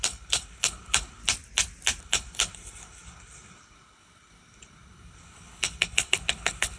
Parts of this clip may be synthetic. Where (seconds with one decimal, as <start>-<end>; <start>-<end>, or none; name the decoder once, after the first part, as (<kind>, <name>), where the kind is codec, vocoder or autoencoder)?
0.0-1.2 (codec, HILCodec); 2.0-6.8

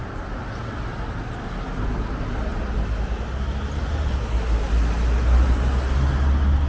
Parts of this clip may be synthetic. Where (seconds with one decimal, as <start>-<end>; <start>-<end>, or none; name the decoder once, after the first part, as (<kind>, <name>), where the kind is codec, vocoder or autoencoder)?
none

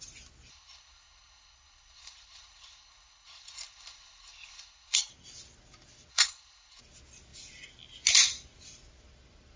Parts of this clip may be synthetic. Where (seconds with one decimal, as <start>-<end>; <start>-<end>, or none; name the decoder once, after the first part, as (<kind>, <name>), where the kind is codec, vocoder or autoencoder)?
0.5-5.1 (codec, HILCodec); 6.1-6.8